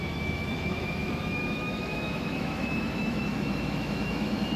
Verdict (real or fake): fake